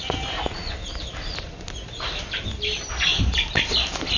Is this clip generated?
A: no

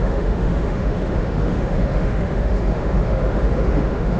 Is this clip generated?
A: yes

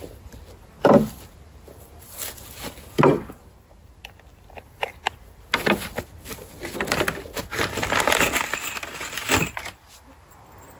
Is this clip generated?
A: no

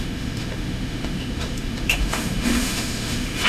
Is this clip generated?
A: yes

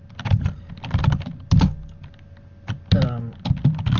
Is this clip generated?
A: no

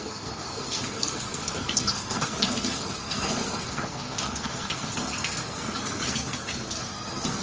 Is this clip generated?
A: yes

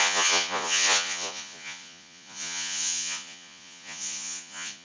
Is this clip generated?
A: yes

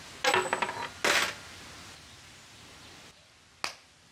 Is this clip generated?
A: no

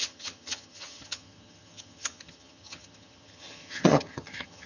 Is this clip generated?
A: yes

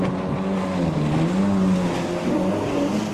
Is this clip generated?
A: no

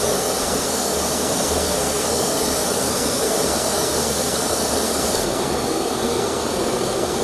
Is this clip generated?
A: yes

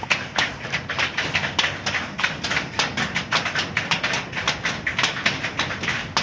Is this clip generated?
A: no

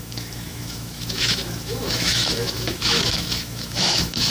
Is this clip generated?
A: yes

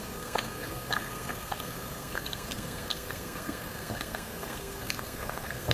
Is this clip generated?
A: yes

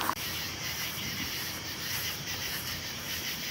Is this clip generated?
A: yes